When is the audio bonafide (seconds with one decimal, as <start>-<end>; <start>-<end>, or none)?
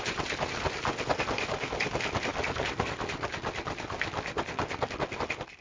0.0-5.6